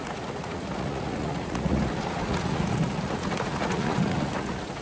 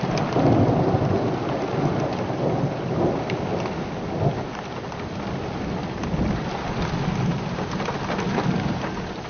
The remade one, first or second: first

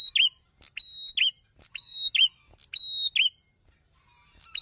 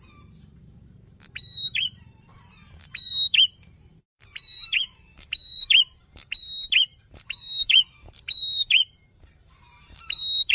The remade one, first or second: second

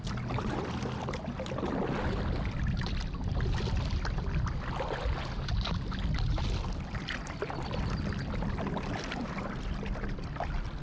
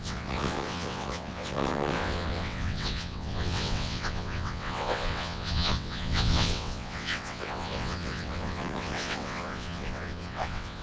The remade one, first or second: second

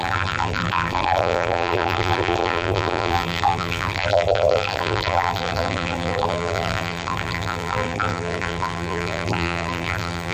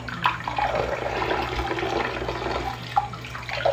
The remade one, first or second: first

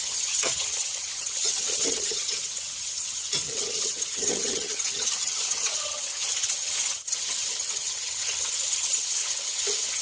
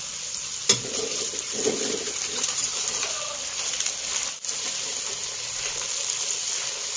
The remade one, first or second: first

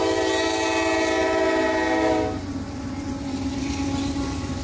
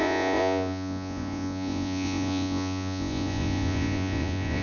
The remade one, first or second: second